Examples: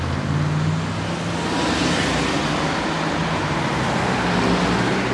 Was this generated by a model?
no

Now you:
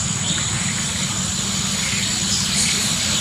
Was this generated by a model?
no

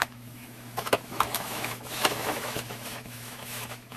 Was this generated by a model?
yes